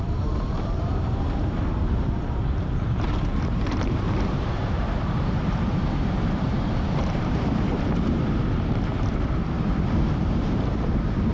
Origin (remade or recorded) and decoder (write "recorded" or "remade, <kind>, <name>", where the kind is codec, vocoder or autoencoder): remade, vocoder, BigVGAN v2